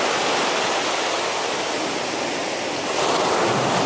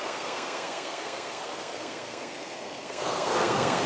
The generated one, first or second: second